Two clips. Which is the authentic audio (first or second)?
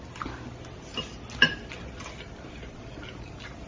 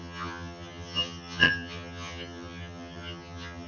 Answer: first